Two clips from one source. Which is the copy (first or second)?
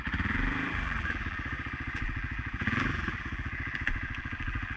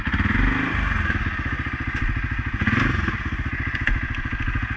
first